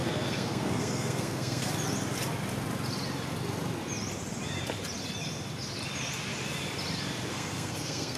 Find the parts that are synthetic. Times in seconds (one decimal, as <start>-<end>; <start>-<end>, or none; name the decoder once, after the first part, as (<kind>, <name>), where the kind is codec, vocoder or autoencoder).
0.0-1.7 (codec, SNAC); 7.3-8.2